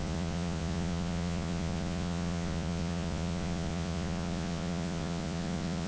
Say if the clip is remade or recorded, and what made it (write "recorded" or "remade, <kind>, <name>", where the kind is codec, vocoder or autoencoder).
remade, vocoder, Vocos